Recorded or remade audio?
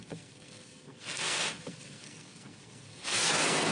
remade